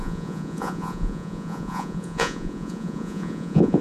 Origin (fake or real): fake